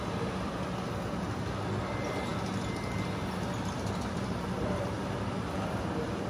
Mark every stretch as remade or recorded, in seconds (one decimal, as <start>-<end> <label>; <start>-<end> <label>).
0.0-6.3 recorded